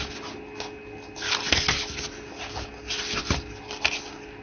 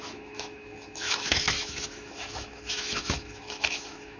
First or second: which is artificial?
second